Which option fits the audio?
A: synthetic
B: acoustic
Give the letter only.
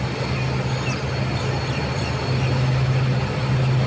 B